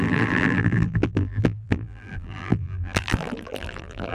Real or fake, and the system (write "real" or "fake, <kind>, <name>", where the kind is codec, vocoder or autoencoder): fake, vocoder, BigVGAN v2